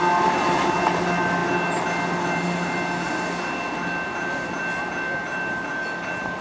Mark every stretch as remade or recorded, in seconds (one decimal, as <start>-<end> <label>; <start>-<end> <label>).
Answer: 0.0-6.4 recorded